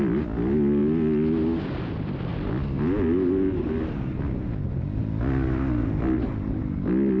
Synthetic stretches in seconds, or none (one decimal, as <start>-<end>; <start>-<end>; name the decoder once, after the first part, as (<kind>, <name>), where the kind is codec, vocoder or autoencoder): none